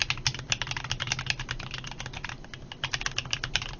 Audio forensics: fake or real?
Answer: real